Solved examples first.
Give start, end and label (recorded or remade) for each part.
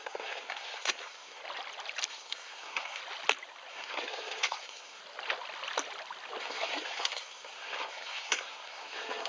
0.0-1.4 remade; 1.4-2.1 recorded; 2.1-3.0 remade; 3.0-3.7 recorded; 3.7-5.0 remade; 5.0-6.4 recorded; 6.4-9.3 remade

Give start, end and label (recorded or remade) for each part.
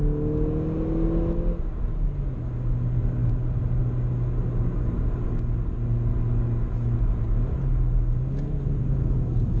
0.0-3.2 recorded; 3.2-3.8 remade; 3.8-9.6 recorded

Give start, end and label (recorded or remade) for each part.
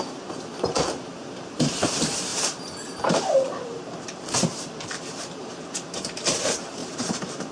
0.0-7.5 remade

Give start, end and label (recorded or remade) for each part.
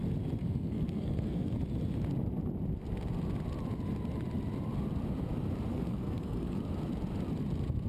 0.0-0.4 recorded; 0.4-1.6 remade; 1.6-5.7 recorded; 5.7-6.6 remade; 6.6-7.9 recorded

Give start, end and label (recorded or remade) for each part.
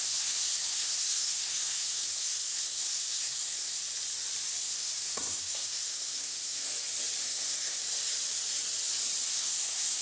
0.0-3.8 remade; 3.8-4.6 recorded; 4.6-6.7 remade; 6.7-7.2 recorded; 7.2-7.8 remade; 7.8-9.3 recorded; 9.3-10.0 remade